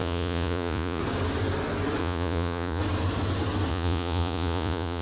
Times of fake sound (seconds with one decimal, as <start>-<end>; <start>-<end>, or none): 0.0-1.0; 2.0-2.8; 3.7-5.0